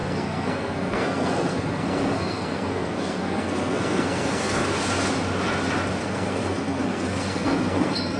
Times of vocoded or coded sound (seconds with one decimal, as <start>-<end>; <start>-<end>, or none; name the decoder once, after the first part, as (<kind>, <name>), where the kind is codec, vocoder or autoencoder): 0.0-4.6 (codec, SNAC); 6.0-8.2